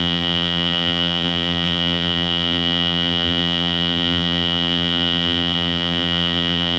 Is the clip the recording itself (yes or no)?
no